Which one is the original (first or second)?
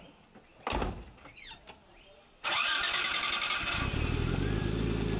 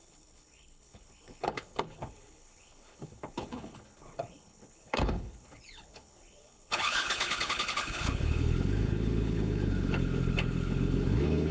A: first